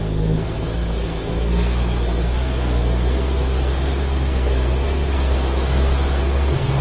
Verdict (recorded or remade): remade